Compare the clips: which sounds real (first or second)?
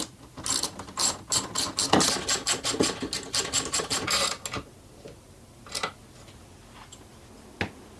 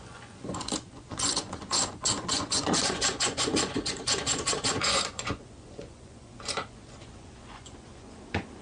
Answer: first